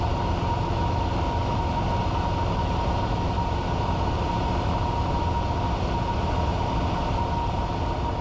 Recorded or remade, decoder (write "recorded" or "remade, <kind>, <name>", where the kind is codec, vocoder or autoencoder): recorded